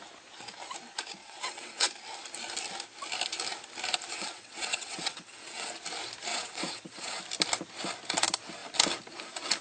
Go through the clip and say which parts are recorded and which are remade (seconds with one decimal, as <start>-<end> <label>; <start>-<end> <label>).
0.0-1.2 recorded; 1.2-1.9 remade; 1.9-4.1 recorded; 4.1-5.7 remade; 5.7-6.3 recorded; 6.3-7.2 remade; 7.2-9.6 recorded